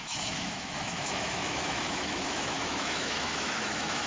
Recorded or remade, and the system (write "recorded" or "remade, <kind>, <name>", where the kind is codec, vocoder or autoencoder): remade, autoencoder, DAC-VAE